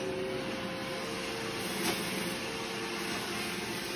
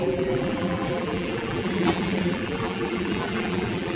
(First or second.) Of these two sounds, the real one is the first